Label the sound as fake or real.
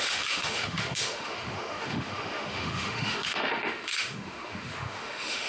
fake